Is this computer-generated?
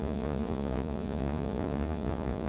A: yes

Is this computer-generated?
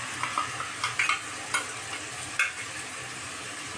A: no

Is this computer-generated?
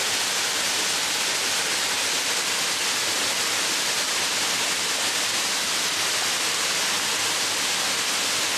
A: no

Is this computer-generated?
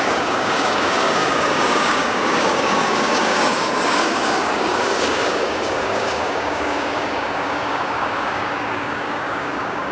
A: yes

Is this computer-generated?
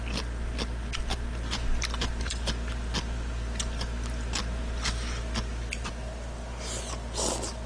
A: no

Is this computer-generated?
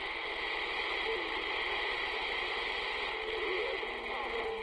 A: no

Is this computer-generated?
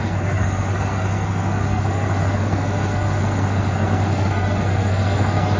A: yes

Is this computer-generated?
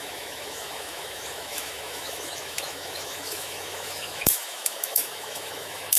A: yes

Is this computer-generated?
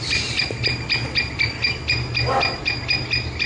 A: no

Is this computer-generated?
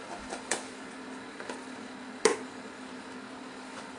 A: no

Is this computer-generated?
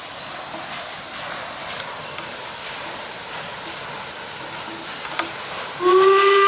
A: no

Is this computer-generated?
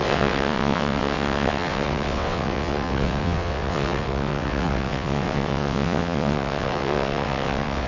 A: yes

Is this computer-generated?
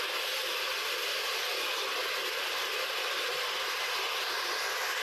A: no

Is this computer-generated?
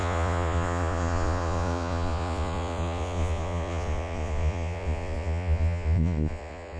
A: yes